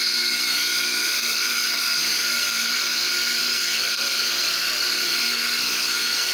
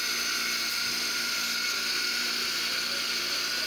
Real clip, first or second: second